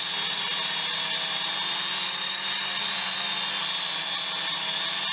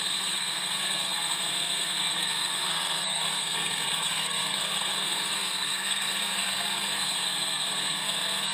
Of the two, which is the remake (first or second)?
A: second